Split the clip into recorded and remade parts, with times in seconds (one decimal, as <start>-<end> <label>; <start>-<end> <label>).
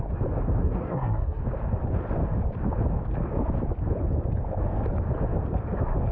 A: 0.0-0.6 recorded; 0.6-1.4 remade; 1.4-6.1 recorded